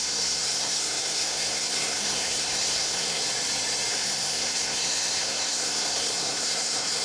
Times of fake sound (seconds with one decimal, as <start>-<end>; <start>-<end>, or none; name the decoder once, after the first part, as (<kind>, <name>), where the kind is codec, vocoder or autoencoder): 0.0-3.2 (codec, SNAC); 3.9-7.0